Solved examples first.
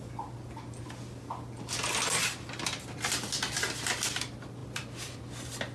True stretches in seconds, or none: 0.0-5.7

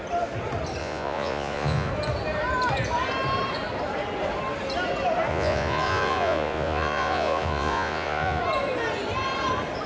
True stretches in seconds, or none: 0.0-0.8; 1.9-5.3; 8.4-9.9

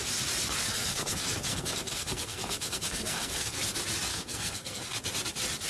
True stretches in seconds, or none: 0.0-0.7; 3.6-4.1; 4.8-5.7